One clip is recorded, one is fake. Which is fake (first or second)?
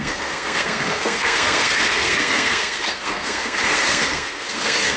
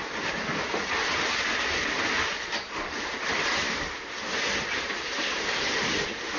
first